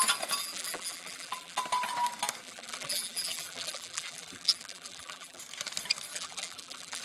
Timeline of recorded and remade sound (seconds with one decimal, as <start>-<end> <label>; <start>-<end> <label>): 0.0-0.4 recorded; 0.4-1.6 remade; 1.6-2.4 recorded; 2.4-5.4 remade; 5.4-6.1 recorded; 6.1-7.0 remade